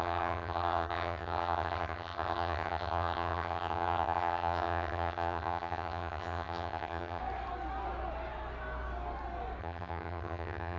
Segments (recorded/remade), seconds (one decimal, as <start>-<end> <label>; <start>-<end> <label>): 0.0-7.2 remade; 7.2-9.6 recorded; 9.6-10.8 remade